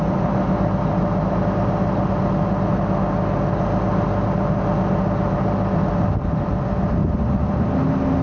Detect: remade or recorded recorded